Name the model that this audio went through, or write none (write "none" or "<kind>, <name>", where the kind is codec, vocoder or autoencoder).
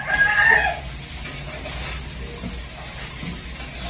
none